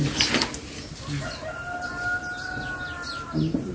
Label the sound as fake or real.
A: real